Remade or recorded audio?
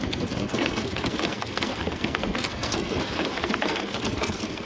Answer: remade